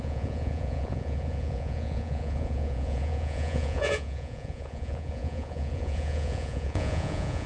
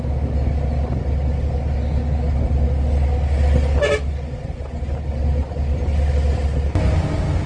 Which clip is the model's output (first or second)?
first